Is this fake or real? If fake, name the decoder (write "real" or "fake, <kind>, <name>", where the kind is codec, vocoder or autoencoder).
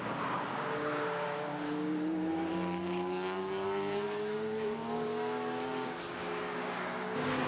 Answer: fake, codec, DAC